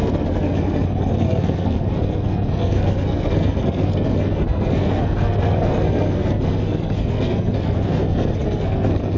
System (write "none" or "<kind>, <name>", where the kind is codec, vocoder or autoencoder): codec, SNAC